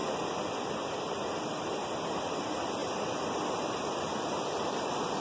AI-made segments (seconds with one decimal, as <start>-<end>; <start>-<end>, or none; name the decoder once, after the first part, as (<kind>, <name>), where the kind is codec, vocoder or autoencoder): none